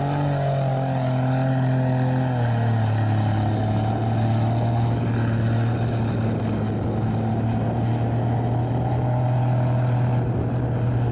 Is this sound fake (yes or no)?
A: no